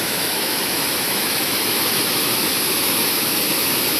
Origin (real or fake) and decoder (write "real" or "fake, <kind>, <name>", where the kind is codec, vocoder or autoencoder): fake, autoencoder, DAC-VAE